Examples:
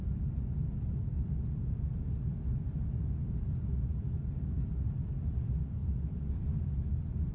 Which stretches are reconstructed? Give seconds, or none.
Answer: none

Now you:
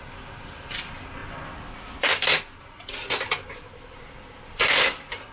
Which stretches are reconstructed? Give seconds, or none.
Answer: none

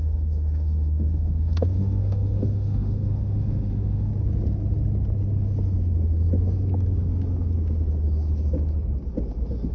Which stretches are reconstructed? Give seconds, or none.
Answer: 0.0-4.1 (autoencoder, DAC-VAE)

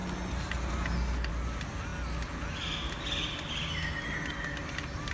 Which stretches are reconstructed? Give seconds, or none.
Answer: none

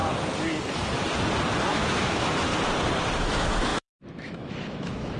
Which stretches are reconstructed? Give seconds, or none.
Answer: 1.7-2.5 (autoencoder, DAC-VAE); 3.2-5.2

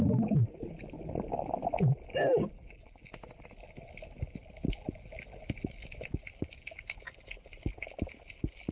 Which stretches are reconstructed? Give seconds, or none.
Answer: none

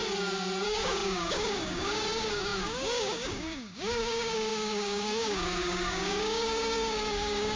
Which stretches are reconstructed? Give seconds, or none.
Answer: 0.6-7.6 (codec, DAC)

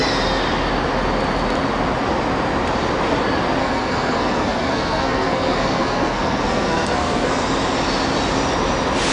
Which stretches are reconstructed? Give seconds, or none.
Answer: 3.6-7.4 (codec, SNAC)